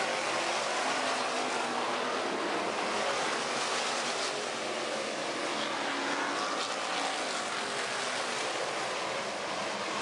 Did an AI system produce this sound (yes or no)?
no